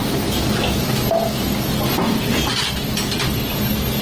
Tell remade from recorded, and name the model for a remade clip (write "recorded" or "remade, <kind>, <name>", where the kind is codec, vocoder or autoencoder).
recorded